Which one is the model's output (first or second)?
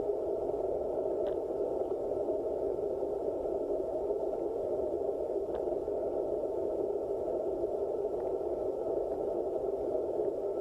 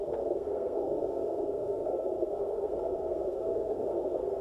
second